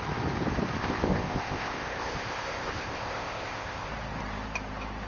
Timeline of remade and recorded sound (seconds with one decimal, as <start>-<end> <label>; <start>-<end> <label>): 0.0-0.8 recorded; 0.8-3.9 remade; 3.9-5.1 recorded